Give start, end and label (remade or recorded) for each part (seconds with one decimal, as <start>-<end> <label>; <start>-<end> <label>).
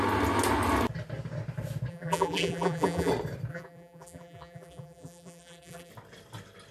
0.0-1.9 recorded; 1.9-3.1 remade; 3.1-3.5 recorded; 3.5-5.9 remade; 5.9-6.7 recorded